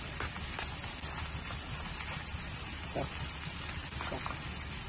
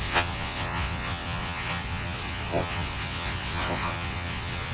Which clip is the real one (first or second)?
first